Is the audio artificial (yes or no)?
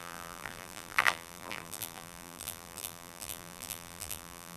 yes